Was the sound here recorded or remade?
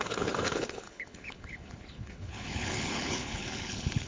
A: remade